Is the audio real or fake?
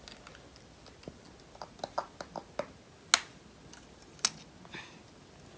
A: real